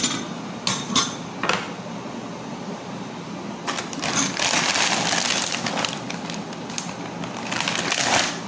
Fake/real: real